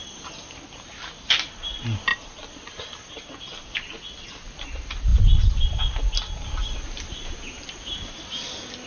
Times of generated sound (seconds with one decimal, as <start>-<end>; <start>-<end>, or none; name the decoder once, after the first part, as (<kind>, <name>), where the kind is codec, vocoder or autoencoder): none

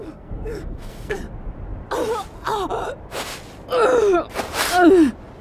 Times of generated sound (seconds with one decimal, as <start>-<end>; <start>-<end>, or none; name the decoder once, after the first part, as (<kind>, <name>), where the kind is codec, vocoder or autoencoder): 0.0-1.2 (codec, SNAC)

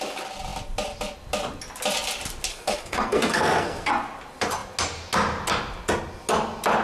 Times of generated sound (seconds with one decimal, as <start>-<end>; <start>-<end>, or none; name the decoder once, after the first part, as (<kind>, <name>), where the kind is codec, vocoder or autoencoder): 2.5-3.9 (codec, SNAC)

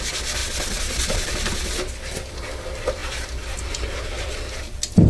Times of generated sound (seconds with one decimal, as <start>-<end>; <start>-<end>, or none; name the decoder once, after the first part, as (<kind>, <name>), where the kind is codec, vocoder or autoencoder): 0.4-1.7 (vocoder, BigVGAN v2); 3.0-5.1

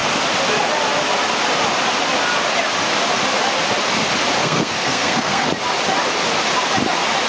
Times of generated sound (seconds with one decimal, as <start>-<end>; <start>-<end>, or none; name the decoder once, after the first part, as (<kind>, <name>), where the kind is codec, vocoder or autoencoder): 4.4-5.5 (codec, SNAC)